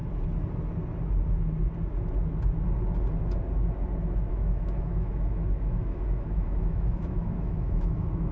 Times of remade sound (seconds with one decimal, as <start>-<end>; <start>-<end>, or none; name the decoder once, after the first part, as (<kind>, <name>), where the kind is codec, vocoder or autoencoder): 4.3-8.3 (autoencoder, DAC-VAE)